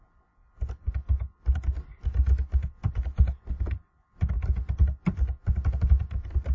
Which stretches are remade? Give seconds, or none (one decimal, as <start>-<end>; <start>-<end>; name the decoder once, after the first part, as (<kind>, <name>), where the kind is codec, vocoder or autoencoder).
none